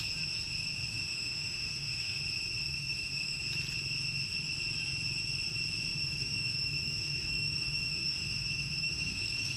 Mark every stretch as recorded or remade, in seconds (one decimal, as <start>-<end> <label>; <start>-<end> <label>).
0.0-0.9 recorded; 0.9-2.2 remade; 2.2-2.6 recorded; 2.6-3.4 remade; 3.4-5.9 recorded; 5.9-9.6 remade